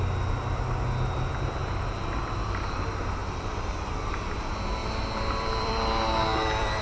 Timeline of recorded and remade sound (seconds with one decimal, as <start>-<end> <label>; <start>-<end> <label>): 0.0-3.2 recorded; 3.2-3.8 remade; 3.8-4.8 recorded; 4.8-6.8 remade